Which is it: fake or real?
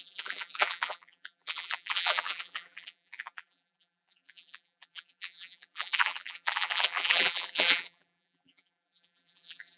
fake